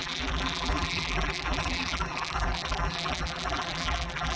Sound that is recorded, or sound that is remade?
remade